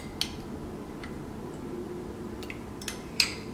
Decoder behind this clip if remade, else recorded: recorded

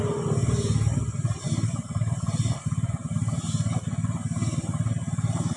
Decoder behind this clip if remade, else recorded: recorded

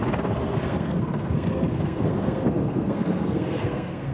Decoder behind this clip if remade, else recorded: remade, codec, SNAC